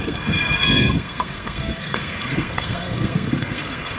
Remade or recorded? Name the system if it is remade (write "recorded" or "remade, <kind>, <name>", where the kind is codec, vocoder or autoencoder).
remade, codec, SNAC